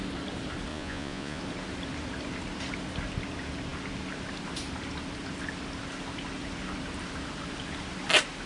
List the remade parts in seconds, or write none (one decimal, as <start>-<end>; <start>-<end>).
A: 0.7-1.4